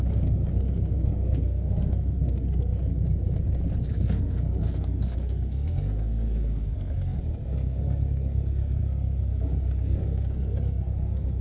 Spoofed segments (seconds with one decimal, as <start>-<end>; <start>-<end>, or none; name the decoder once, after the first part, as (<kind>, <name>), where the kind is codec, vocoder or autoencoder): 0.0-2.9 (codec, SNAC); 3.9-11.4